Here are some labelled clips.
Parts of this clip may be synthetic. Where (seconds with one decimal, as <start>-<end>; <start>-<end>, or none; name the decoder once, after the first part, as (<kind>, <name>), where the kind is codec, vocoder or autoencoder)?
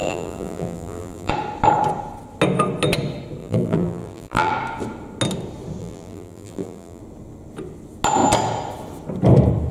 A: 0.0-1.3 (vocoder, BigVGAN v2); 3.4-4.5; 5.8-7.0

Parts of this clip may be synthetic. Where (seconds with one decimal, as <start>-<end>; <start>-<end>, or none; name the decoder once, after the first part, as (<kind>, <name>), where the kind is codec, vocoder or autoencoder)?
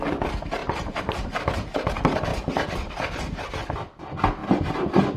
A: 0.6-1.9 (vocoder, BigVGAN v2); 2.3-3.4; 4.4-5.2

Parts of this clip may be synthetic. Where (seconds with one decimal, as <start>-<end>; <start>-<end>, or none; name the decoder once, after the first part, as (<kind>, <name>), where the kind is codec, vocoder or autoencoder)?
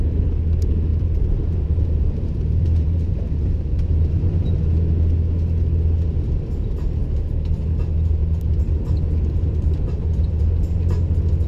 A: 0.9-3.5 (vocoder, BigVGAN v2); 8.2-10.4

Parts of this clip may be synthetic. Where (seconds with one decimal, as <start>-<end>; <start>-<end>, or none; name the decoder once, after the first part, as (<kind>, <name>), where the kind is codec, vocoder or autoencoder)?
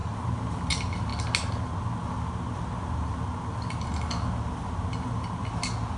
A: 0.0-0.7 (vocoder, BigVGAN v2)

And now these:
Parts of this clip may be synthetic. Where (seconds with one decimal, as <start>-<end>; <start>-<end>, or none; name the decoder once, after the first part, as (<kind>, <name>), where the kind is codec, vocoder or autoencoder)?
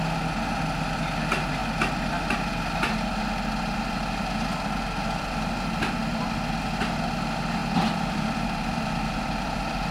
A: 7.6-9.9 (vocoder, BigVGAN v2)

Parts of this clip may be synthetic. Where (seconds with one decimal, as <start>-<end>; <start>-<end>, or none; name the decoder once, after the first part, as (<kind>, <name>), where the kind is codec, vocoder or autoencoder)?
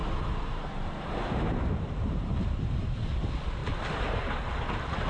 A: 0.0-3.1 (vocoder, BigVGAN v2); 3.6-4.4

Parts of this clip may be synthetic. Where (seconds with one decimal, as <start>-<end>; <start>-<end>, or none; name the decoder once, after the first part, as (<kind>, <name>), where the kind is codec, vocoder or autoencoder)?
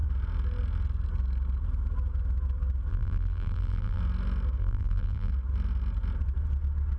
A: 2.9-4.0 (vocoder, BigVGAN v2); 4.6-5.3